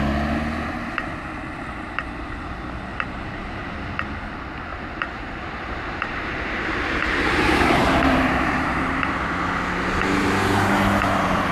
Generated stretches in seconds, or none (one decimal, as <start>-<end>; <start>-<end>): 2.9-3.7; 4.7-9.1